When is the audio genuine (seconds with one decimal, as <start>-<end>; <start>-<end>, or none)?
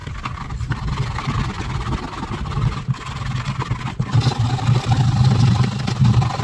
0.0-6.4